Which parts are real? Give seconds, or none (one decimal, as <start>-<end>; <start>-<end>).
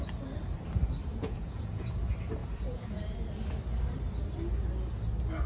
0.0-1.1; 1.9-2.4; 3.0-5.5